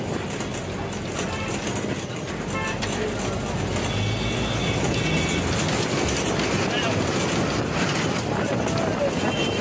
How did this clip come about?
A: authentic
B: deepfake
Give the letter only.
A